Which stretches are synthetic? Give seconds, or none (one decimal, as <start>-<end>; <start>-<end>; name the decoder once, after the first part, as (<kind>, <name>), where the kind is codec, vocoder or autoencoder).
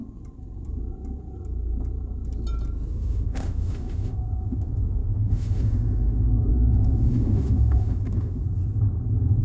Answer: 2.9-8.4 (autoencoder, DAC-VAE)